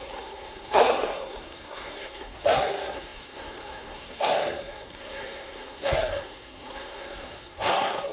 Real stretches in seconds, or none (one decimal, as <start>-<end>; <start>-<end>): none